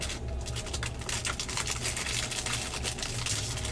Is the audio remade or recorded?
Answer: recorded